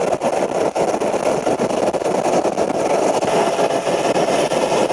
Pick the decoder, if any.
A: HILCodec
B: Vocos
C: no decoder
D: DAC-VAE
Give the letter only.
C